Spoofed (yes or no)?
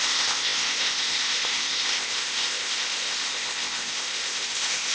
yes